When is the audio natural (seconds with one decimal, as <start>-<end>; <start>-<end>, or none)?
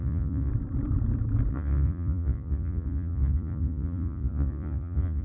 0.5-1.5